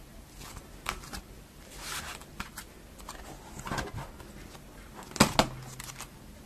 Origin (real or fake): real